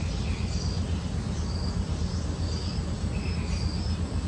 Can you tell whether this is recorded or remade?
recorded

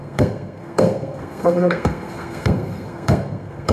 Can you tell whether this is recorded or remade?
remade